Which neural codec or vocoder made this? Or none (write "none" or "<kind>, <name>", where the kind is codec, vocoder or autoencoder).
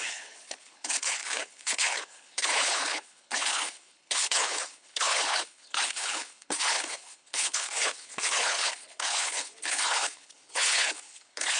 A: codec, HILCodec